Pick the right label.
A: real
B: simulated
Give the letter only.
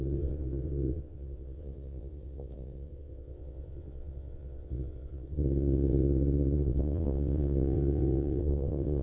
B